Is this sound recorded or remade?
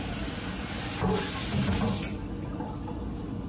recorded